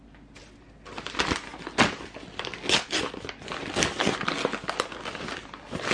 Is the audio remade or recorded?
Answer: recorded